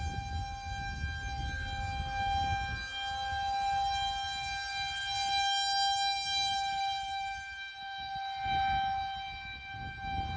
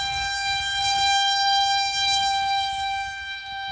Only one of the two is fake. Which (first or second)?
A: second